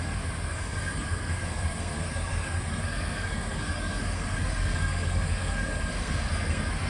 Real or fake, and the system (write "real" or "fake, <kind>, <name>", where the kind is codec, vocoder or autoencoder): fake, codec, SNAC